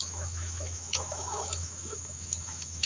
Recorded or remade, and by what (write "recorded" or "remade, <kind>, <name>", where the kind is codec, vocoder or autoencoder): remade, autoencoder, DAC-VAE